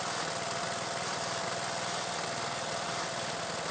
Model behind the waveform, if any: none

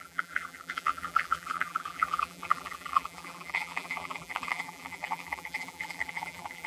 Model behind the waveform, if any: vocoder, BigVGAN v2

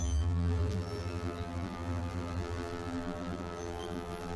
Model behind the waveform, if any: vocoder, BigVGAN v2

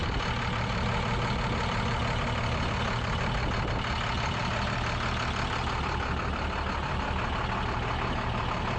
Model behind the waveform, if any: none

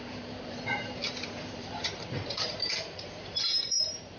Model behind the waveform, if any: vocoder, BigVGAN v2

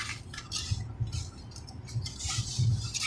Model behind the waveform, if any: none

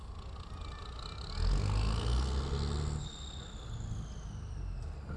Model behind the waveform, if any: none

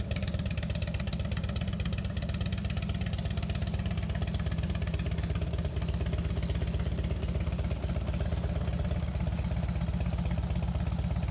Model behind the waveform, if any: none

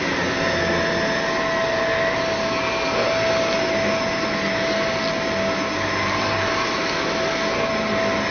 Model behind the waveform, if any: none